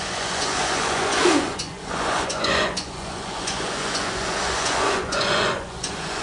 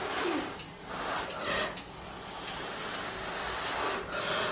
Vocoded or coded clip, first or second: first